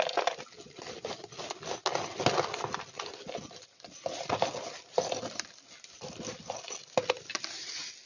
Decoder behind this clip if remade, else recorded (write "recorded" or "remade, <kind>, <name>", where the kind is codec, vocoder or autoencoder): recorded